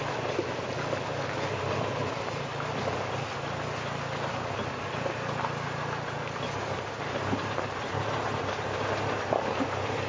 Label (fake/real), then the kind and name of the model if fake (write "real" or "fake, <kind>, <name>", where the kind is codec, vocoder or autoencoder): real